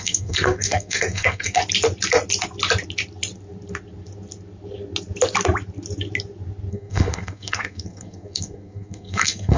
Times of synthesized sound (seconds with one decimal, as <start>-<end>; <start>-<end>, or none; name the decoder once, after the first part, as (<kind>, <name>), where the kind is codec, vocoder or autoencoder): 0.0-1.6 (codec, SNAC); 6.7-9.6